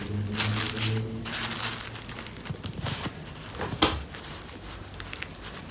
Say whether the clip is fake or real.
real